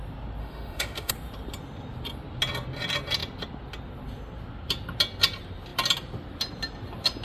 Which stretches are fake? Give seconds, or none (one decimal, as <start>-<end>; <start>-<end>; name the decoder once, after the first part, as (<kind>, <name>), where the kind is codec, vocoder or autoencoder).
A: 0.4-1.1 (autoencoder, DAC-VAE)